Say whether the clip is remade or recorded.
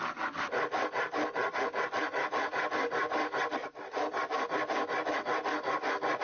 recorded